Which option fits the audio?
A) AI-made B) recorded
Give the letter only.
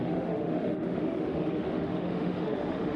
A